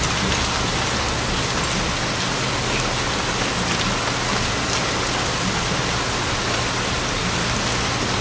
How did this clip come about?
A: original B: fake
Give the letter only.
A